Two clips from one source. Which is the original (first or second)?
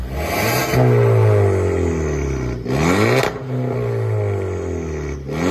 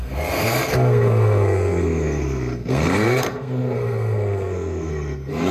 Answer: first